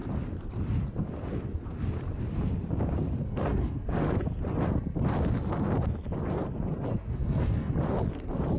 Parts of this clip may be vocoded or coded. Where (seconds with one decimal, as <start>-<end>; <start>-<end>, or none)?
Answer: 3.2-4.1; 6.9-7.7